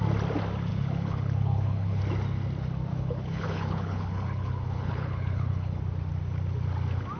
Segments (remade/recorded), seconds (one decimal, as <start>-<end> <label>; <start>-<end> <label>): 0.0-0.7 recorded; 0.7-2.0 remade; 2.0-2.9 recorded; 2.9-5.8 remade; 5.8-7.2 recorded